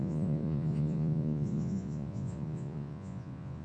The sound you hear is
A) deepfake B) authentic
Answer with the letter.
A